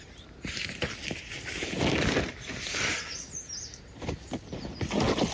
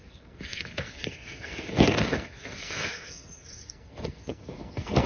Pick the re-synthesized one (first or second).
second